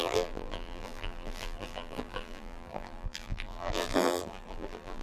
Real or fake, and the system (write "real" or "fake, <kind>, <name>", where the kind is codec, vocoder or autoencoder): fake, vocoder, BigVGAN v2